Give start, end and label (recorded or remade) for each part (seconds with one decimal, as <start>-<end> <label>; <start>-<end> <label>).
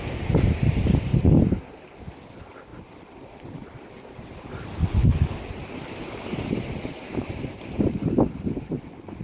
0.0-9.2 recorded